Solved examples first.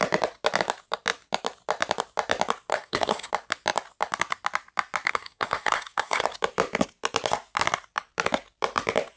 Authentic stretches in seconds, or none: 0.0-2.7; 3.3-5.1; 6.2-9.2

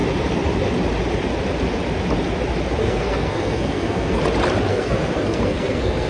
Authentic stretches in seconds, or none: 0.0-2.8; 4.2-4.7

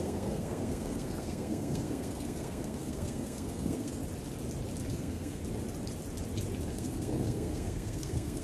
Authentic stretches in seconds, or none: 4.0-4.9; 5.4-6.7

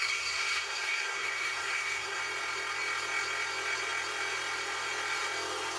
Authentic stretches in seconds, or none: 2.2-5.8

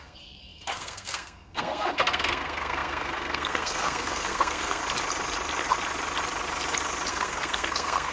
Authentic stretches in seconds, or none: 4.8-7.1